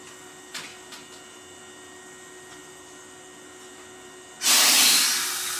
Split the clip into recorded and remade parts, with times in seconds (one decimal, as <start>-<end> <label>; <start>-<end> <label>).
0.0-5.6 recorded